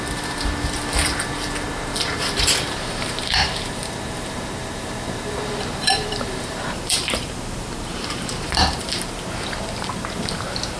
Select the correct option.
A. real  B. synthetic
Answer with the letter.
B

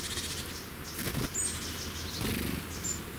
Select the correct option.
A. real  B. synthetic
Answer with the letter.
A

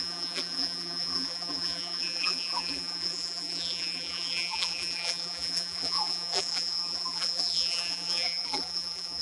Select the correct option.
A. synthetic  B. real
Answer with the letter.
A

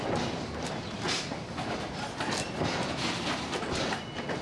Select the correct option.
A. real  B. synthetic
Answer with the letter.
A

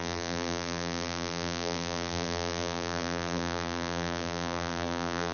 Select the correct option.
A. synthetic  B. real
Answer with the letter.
A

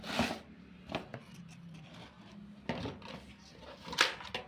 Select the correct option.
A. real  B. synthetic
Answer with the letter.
A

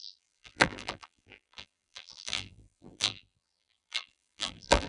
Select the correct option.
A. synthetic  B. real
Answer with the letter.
A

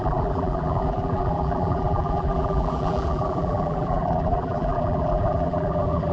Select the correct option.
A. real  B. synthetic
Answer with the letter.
B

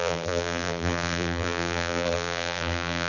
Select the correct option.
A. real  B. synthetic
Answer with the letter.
B